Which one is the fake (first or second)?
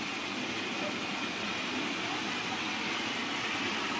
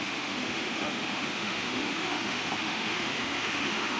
second